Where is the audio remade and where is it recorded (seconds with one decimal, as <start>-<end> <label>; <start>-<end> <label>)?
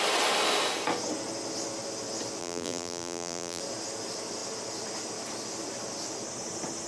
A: 0.0-2.4 recorded; 2.4-3.6 remade; 3.6-6.9 recorded